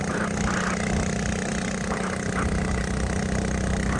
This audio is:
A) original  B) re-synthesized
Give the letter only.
A